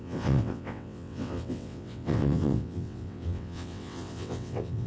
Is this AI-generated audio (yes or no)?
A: yes